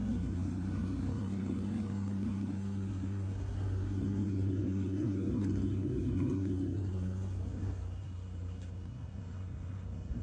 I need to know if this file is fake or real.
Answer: fake